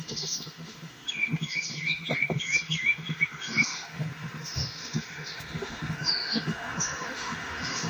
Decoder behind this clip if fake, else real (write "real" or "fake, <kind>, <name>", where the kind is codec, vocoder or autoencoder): fake, autoencoder, DAC-VAE